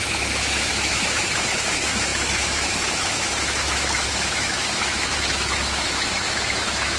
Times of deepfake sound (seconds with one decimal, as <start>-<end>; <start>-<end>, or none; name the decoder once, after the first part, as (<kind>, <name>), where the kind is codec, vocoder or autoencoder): 0.0-7.0 (autoencoder, DAC-VAE)

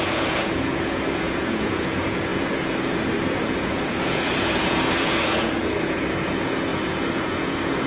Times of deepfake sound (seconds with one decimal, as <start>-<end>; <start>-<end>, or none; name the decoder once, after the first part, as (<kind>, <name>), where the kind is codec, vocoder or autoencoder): 0.0-7.9 (vocoder, Vocos)

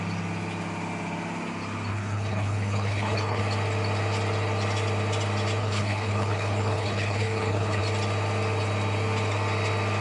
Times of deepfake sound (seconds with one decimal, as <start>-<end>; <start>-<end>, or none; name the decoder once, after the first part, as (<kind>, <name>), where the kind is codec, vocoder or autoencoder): 1.9-3.4 (codec, HILCodec); 5.6-7.8

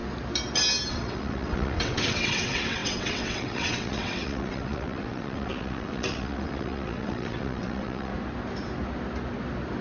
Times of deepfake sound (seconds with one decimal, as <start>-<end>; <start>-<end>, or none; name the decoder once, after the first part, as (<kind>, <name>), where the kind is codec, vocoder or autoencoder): 0.9-8.1 (vocoder, WaveNeXt)

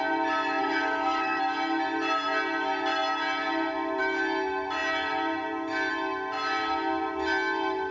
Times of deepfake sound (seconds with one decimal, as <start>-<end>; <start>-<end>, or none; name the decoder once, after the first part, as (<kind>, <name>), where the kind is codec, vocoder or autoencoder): 0.6-1.4 (codec, SNAC)